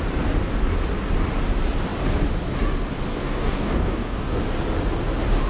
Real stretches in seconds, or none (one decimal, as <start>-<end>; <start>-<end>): 0.0-3.1; 4.4-5.5